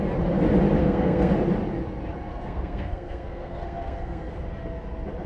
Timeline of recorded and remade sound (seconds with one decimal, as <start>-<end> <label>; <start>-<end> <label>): 0.0-0.8 recorded; 0.8-1.3 remade; 1.3-2.3 recorded; 2.3-4.3 remade; 4.3-5.3 recorded